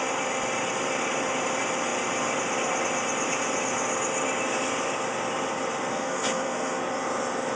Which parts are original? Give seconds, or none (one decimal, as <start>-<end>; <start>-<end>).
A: 0.0-5.9; 6.8-7.6

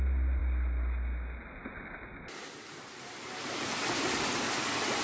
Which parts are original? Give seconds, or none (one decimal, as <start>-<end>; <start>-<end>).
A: 0.0-5.0

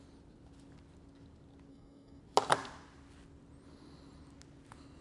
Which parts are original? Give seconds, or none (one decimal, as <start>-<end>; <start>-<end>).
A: 0.0-1.7; 2.2-5.0

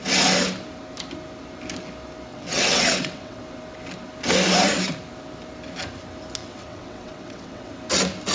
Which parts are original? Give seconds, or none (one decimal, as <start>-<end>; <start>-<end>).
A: 0.0-2.3; 3.4-6.4; 7.7-8.3

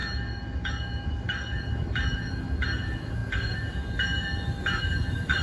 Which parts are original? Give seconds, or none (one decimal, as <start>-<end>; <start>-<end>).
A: none

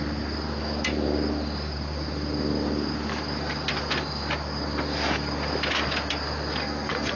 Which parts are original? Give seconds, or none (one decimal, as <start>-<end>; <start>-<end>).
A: 0.0-6.6